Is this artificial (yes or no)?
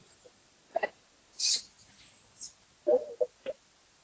no